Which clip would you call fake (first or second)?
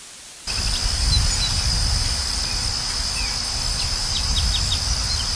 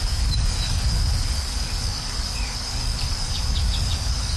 second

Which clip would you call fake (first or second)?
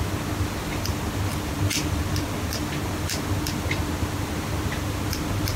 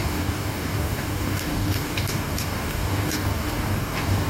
second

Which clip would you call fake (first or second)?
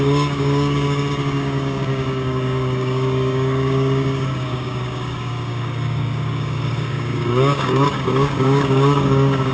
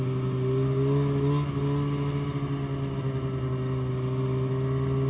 first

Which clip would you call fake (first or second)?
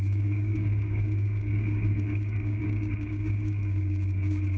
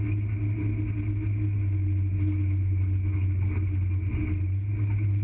first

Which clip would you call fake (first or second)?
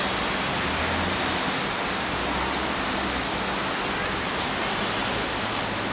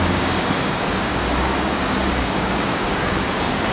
second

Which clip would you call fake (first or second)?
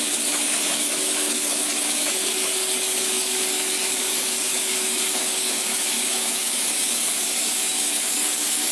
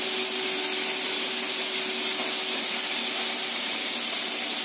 first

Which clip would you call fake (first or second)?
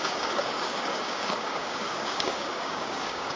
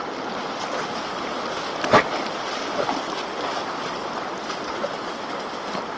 first